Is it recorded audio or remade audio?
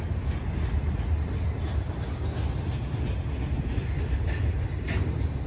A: recorded